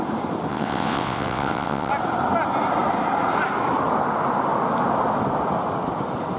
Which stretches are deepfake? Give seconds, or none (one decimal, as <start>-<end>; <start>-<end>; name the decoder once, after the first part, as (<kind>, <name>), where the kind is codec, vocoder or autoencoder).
0.5-1.9 (vocoder, WaveNeXt)